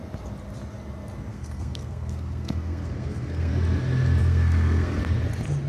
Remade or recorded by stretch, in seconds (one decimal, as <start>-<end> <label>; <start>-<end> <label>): 0.0-1.3 recorded; 1.3-3.5 remade; 3.5-4.2 recorded; 4.2-5.0 remade; 5.0-5.7 recorded

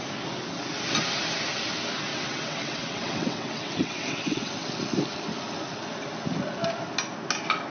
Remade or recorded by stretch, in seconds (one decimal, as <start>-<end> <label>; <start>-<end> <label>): 0.0-2.1 recorded; 2.1-4.5 remade; 4.5-7.7 recorded

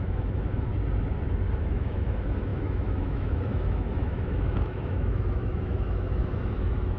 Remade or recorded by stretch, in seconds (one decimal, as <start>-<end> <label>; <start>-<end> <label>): 0.0-0.7 remade; 0.7-1.6 recorded; 1.6-7.0 remade

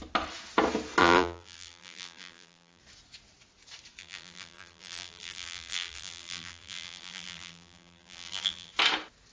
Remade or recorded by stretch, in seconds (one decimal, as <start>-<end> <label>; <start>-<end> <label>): 0.0-1.0 recorded; 1.0-2.8 remade; 2.8-4.0 recorded; 4.0-8.7 remade; 8.7-9.3 recorded

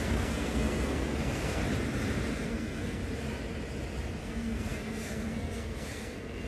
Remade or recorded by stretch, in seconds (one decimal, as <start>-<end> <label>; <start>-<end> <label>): 0.0-1.6 remade; 1.6-2.3 recorded; 2.3-3.0 remade; 3.0-4.2 recorded; 4.2-6.5 remade

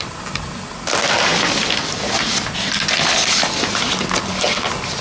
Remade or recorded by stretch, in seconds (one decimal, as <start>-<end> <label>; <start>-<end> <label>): 0.0-5.0 recorded